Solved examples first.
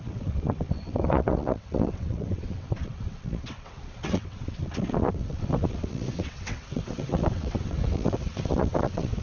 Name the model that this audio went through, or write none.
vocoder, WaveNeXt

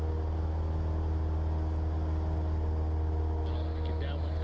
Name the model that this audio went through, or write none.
none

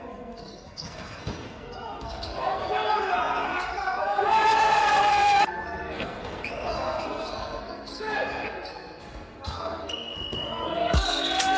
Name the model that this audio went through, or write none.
codec, SNAC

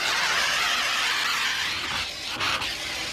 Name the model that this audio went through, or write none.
none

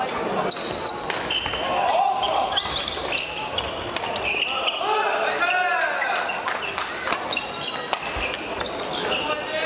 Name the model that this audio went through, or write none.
none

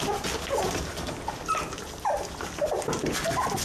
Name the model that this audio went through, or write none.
none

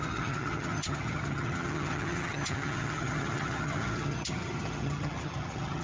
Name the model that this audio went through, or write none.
vocoder, HiFi-GAN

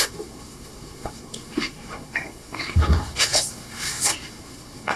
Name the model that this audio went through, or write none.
codec, SNAC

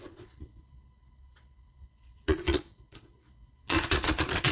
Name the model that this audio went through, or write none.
vocoder, Vocos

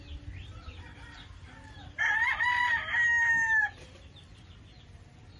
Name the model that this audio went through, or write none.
none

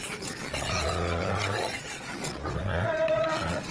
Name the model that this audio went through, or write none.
vocoder, Vocos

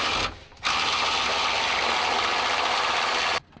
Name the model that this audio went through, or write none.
none